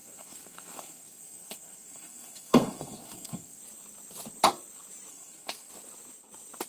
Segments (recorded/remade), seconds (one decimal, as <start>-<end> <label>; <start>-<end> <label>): 0.0-3.6 remade; 3.6-5.1 recorded; 5.1-5.7 remade; 5.7-6.7 recorded